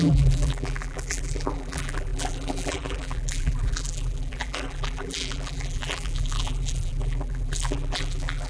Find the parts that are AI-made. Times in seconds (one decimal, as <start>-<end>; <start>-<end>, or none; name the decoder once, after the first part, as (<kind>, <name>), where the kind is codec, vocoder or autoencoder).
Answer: 0.0-8.5 (vocoder, BigVGAN v2)